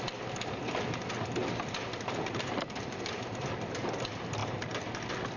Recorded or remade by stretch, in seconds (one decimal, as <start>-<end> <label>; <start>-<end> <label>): 0.0-1.4 recorded; 1.4-2.8 remade; 2.8-5.4 recorded